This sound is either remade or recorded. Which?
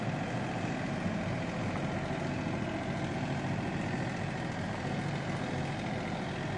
recorded